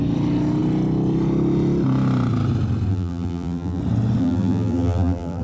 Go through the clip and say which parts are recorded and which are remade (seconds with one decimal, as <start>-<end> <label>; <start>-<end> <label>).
0.0-2.9 recorded; 2.9-3.8 remade; 3.8-4.2 recorded; 4.2-5.4 remade